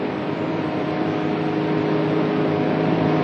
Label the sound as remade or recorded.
remade